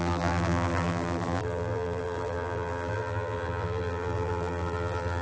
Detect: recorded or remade remade